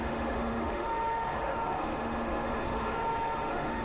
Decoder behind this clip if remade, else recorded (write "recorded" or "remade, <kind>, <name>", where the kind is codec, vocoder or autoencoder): remade, autoencoder, DAC-VAE